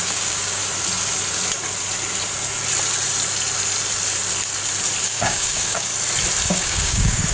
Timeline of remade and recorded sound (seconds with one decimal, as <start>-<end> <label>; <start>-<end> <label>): 0.0-0.6 remade; 0.6-5.0 recorded; 5.0-5.9 remade; 5.9-6.5 recorded; 6.5-7.3 remade